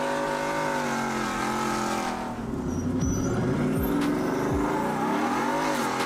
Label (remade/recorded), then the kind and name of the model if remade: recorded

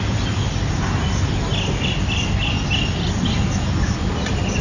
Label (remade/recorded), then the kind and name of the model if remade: recorded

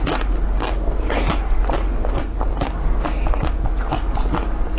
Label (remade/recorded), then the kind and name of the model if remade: recorded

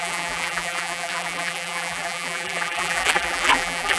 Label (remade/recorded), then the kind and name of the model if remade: remade, vocoder, BigVGAN v2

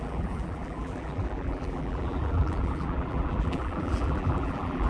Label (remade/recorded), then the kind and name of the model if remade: remade, vocoder, BigVGAN v2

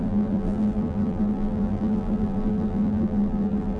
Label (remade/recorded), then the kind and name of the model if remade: remade, vocoder, BigVGAN v2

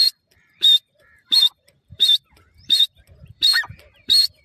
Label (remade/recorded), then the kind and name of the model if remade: remade, vocoder, BigVGAN v2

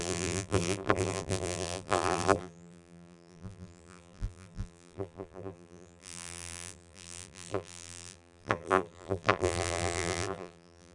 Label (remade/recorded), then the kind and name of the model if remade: remade, vocoder, BigVGAN v2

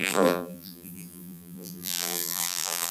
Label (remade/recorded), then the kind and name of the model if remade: remade, vocoder, BigVGAN v2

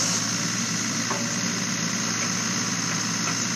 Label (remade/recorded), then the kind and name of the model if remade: recorded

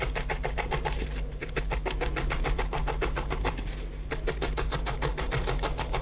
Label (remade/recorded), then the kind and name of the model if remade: remade, vocoder, BigVGAN v2